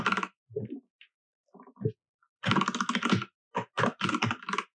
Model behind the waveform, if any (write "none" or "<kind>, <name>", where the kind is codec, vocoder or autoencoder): none